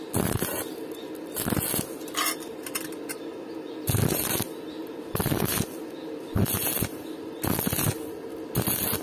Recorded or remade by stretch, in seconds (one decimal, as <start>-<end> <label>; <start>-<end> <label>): 0.0-4.8 recorded; 4.8-5.5 remade; 5.5-9.0 recorded